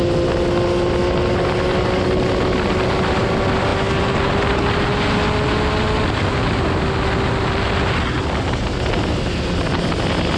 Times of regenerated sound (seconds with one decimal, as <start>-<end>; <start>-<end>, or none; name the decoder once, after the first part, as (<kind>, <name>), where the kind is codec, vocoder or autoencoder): none